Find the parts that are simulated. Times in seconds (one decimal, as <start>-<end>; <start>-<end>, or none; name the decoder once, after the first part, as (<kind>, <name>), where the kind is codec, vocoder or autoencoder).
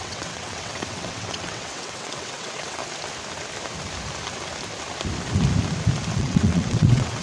0.0-2.8 (vocoder, WaveNeXt); 6.1-7.2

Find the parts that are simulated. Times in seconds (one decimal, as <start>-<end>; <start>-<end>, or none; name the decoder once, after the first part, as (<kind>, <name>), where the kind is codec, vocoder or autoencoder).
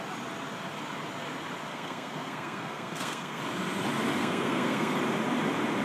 1.7-3.4 (codec, SNAC); 4.2-5.0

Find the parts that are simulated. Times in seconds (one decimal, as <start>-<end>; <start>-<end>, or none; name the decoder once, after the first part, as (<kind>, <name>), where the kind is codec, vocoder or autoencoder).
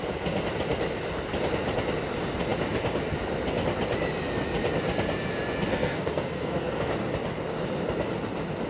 5.7-6.9 (codec, SNAC)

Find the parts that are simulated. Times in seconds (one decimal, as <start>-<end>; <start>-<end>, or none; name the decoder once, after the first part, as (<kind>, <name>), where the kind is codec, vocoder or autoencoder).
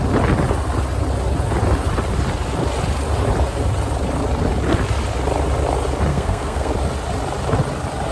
6.1-6.7 (codec, SNAC)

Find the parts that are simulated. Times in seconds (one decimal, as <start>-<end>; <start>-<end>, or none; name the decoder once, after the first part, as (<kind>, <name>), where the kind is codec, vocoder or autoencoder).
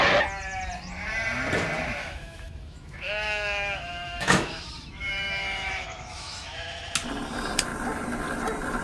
2.0-6.9 (autoencoder, DAC-VAE)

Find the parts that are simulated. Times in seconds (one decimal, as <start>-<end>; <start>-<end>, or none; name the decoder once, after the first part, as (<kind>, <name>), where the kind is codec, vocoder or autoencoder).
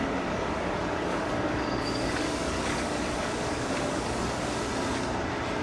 0.0-4.7 (codec, DAC)